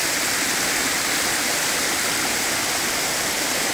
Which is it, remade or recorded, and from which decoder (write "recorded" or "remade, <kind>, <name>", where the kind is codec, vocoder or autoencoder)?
recorded